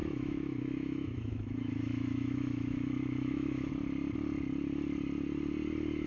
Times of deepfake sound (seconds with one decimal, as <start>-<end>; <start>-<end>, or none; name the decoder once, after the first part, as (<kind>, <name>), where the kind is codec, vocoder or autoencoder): 0.0-3.7 (autoencoder, DAC-VAE)